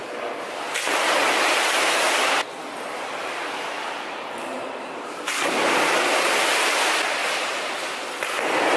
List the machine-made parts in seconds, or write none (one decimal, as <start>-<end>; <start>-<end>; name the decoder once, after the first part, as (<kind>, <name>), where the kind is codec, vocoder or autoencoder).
3.2-6.7 (vocoder, BigVGAN v2); 7.2-7.9